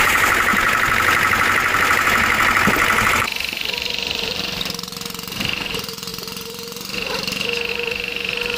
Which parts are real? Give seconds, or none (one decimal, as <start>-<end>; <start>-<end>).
0.5-3.1; 6.1-7.7